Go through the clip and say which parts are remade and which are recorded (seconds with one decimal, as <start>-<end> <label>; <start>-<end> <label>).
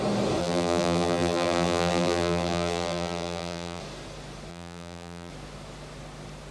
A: 0.0-0.4 recorded; 0.4-3.8 remade; 3.8-4.5 recorded; 4.5-5.3 remade; 5.3-6.5 recorded